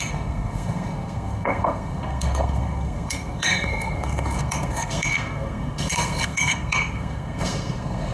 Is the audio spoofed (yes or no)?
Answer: yes